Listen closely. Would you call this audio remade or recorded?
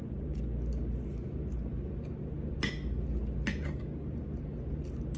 recorded